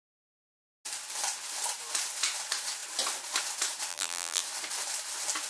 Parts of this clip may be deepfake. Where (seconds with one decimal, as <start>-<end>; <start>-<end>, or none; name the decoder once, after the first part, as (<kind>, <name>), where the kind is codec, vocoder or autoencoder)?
3.9-4.4 (vocoder, BigVGAN v2)